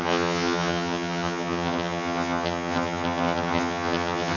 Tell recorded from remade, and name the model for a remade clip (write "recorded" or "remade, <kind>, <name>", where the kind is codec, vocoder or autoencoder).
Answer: remade, vocoder, HiFi-GAN